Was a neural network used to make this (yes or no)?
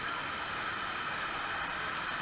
no